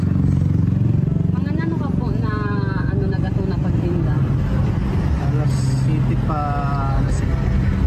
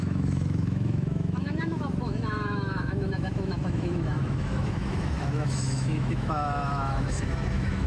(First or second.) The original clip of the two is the first